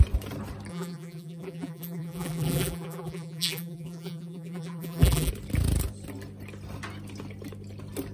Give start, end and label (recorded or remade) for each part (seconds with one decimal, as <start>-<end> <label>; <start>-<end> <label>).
0.0-0.7 recorded; 0.7-5.3 remade; 5.3-8.1 recorded